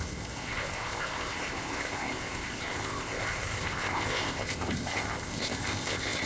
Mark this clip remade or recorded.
remade